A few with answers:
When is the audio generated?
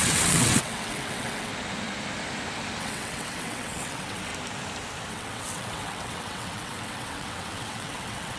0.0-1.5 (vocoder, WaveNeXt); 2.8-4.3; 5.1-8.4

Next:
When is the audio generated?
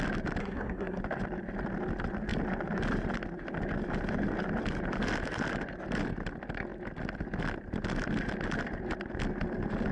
0.4-1.0 (codec, SNAC)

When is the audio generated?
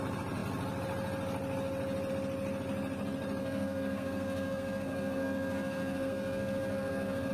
3.4-7.3 (codec, SNAC)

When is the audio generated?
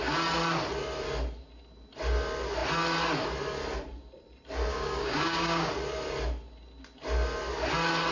4.7-5.7 (codec, DAC)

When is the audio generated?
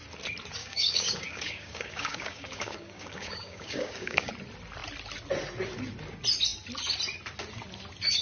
0.6-4.3 (codec, DAC)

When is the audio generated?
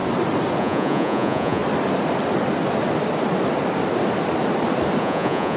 0.6-1.6 (vocoder, Vocos); 5.0-5.6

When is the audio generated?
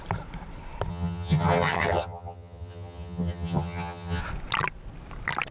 0.9-4.2 (vocoder, HiFi-GAN)